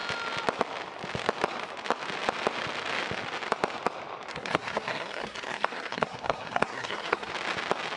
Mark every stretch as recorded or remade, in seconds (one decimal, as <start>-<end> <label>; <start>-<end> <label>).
0.0-4.3 recorded; 4.3-7.3 remade; 7.3-8.0 recorded